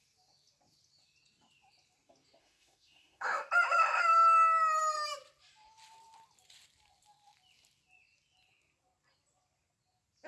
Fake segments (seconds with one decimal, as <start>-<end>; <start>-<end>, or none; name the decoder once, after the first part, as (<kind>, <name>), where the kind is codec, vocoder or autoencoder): 2.4-3.5 (autoencoder, DAC-VAE)